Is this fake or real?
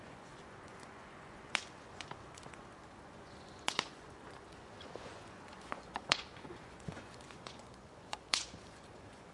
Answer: fake